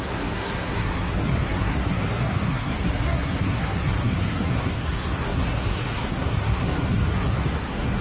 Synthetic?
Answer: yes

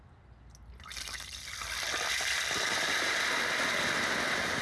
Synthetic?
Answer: no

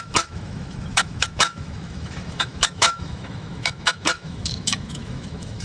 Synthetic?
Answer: yes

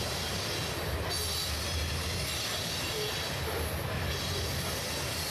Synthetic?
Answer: no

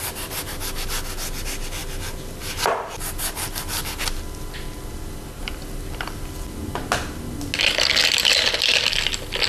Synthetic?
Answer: no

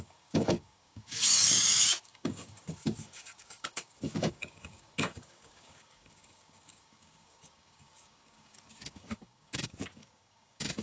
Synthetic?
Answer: yes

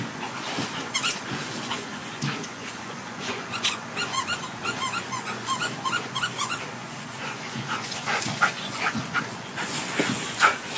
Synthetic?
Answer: yes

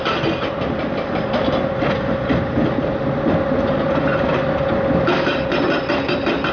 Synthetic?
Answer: no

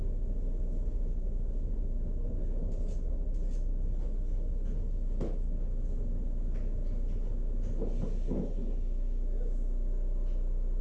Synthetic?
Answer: no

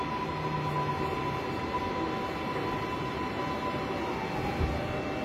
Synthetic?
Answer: no